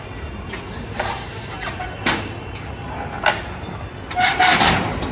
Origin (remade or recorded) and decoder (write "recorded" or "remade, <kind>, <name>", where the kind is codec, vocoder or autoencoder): recorded